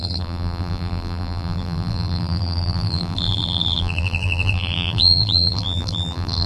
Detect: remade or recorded remade